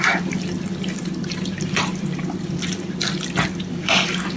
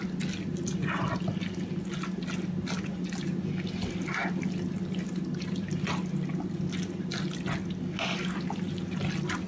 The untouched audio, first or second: second